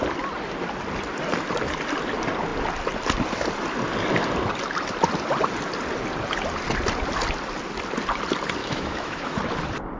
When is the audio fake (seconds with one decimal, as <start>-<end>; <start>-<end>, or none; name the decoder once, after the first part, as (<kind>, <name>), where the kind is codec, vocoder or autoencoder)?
8.6-9.4 (autoencoder, DAC-VAE)